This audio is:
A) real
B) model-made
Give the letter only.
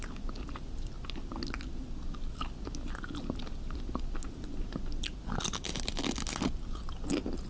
A